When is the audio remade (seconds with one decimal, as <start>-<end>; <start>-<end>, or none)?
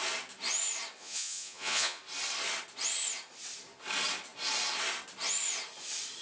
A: 1.0-2.0